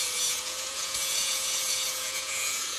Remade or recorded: remade